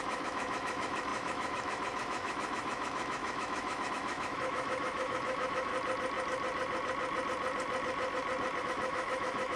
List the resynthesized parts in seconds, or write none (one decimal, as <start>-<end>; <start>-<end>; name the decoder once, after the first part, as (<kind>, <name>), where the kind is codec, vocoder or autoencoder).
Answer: 0.0-5.7 (autoencoder, DAC-VAE); 8.6-9.6